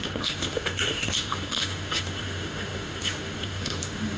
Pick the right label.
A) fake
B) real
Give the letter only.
A